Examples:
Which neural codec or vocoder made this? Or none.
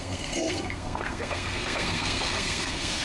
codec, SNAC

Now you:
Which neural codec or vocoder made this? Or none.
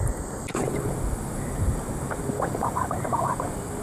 none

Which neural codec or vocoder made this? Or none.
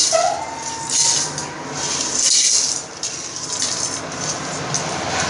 none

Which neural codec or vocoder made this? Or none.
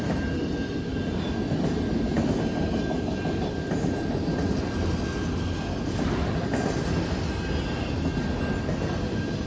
none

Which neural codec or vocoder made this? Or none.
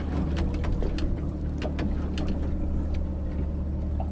none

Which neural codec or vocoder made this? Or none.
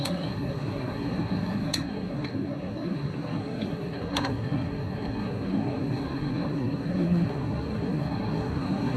codec, SNAC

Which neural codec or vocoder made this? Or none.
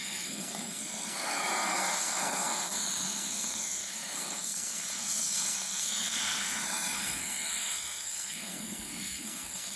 codec, SNAC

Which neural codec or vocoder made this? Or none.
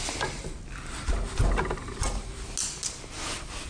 none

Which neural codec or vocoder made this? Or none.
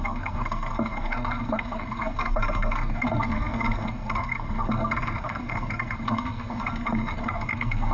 codec, SNAC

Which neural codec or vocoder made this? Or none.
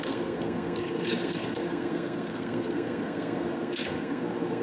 codec, SNAC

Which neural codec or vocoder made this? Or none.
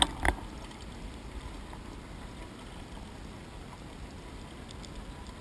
none